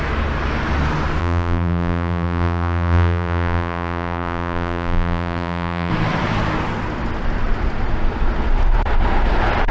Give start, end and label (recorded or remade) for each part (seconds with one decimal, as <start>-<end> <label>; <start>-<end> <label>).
0.0-1.2 recorded; 1.2-5.9 remade; 5.9-9.7 recorded